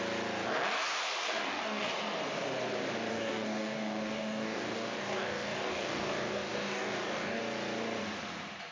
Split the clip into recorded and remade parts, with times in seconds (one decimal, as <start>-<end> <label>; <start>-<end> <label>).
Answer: 0.0-1.2 recorded; 1.2-2.0 remade; 2.0-3.1 recorded; 3.1-7.4 remade; 7.4-8.7 recorded